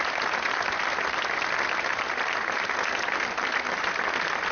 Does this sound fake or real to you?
real